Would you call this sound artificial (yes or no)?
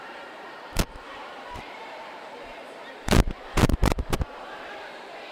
yes